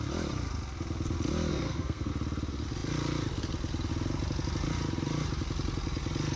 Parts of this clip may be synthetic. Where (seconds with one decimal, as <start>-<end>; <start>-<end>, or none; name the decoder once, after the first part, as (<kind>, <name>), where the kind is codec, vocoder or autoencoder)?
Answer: 1.5-2.1 (codec, SNAC)

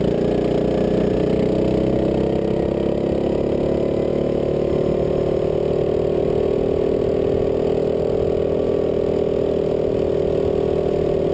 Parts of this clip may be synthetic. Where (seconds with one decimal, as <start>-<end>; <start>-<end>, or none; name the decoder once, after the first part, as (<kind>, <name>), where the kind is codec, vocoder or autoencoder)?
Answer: 4.1-4.7 (autoencoder, DAC-VAE)

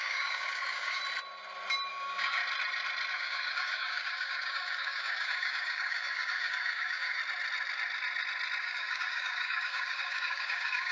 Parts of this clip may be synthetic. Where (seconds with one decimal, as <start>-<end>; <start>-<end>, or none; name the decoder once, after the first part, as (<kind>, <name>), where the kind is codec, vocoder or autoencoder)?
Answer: 0.0-1.0 (codec, DAC); 1.9-2.4; 3.1-7.2; 8.6-10.9

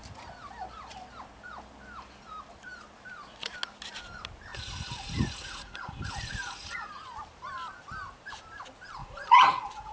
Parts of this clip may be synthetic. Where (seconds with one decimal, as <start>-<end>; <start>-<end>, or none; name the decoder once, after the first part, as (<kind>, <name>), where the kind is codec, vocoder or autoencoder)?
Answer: 4.5-6.9 (vocoder, Vocos); 9.0-9.9